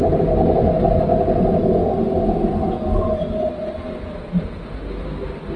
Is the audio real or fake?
real